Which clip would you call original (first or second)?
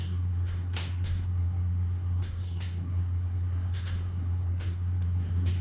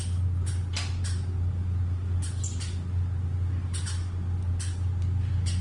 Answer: second